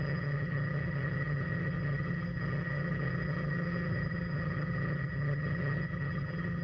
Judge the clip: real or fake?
fake